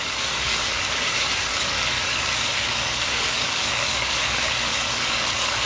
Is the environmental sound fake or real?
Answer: fake